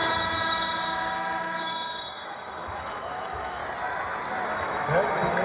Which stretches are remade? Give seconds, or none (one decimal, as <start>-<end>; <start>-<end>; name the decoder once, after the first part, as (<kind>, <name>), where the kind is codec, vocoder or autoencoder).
0.0-3.6 (autoencoder, DAC-VAE); 4.5-5.4